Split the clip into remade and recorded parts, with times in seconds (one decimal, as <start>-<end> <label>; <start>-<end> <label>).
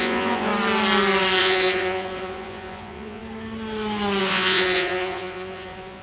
0.0-0.5 remade; 0.5-1.4 recorded; 1.4-3.2 remade; 3.2-4.2 recorded; 4.2-6.0 remade